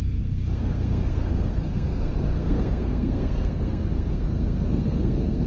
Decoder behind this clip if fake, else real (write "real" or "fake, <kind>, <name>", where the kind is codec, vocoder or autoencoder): fake, codec, SNAC